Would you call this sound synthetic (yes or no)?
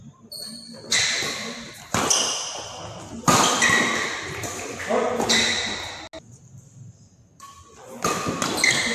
no